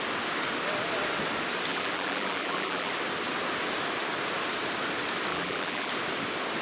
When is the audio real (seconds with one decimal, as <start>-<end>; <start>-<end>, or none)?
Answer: 0.0-1.7; 2.9-5.3; 5.9-6.6